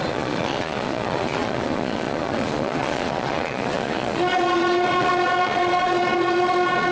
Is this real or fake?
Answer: fake